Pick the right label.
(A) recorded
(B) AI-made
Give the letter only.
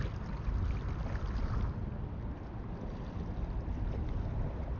A